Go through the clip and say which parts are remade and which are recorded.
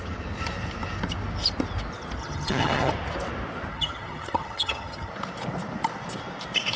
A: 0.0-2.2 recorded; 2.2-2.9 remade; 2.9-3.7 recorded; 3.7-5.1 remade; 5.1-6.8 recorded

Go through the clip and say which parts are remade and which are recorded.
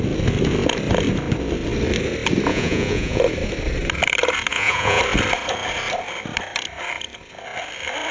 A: 0.0-2.5 recorded; 2.5-3.2 remade; 3.2-4.5 recorded; 4.5-5.0 remade; 5.0-8.1 recorded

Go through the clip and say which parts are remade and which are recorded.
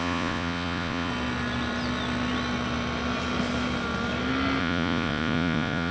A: 0.0-1.1 remade; 1.1-4.6 recorded; 4.6-5.9 remade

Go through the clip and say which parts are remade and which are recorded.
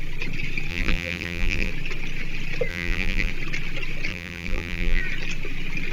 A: 0.0-0.7 recorded; 0.7-1.7 remade; 1.7-2.7 recorded; 2.7-3.3 remade; 3.3-4.1 recorded; 4.1-5.0 remade; 5.0-5.9 recorded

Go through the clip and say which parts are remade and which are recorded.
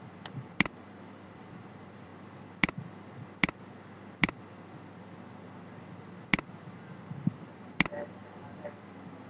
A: 0.0-2.1 remade; 2.1-6.8 recorded; 6.8-9.3 remade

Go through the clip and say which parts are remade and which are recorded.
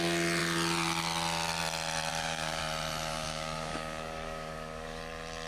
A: 0.0-2.1 recorded; 2.1-2.6 remade; 2.6-3.1 recorded; 3.1-5.0 remade; 5.0-5.5 recorded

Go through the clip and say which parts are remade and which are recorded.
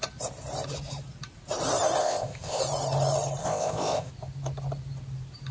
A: 0.0-2.0 recorded; 2.0-2.6 remade; 2.6-3.4 recorded; 3.4-4.1 remade; 4.1-5.5 recorded